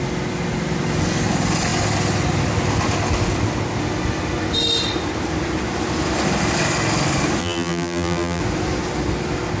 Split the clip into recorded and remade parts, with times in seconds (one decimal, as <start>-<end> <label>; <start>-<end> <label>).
0.0-7.4 recorded; 7.4-8.4 remade; 8.4-9.6 recorded